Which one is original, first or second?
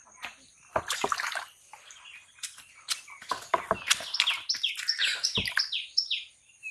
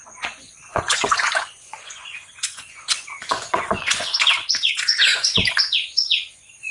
first